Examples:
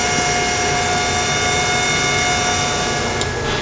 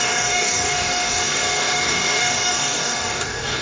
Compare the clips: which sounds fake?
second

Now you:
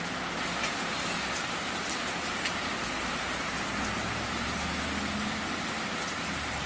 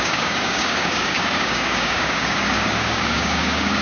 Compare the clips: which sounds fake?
second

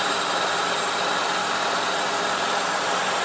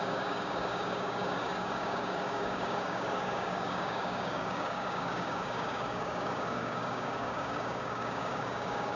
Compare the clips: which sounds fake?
second